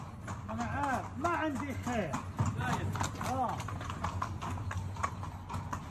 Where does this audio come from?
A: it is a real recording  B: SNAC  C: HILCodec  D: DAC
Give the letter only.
A